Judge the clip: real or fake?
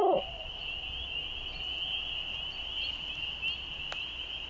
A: real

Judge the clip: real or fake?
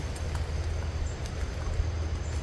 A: real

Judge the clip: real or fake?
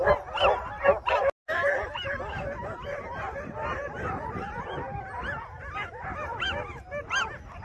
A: real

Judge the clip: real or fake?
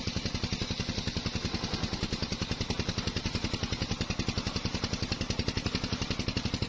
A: real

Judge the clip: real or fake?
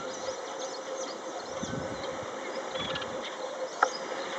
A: real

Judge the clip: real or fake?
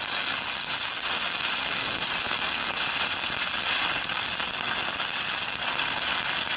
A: real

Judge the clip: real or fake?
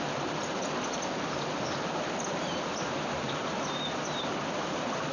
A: real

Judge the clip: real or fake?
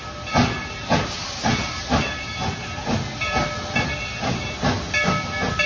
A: real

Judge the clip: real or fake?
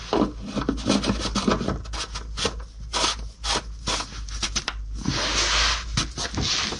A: real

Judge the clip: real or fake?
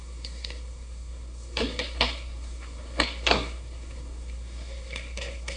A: fake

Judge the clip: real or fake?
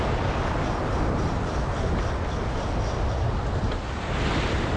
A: real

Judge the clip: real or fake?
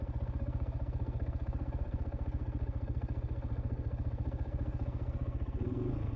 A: fake